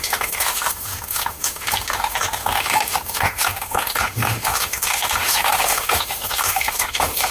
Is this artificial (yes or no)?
yes